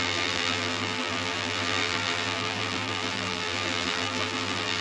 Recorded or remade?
remade